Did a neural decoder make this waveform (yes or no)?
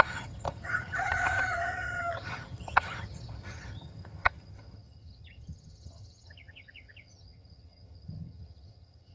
yes